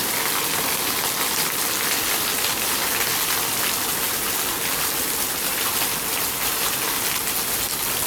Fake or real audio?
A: real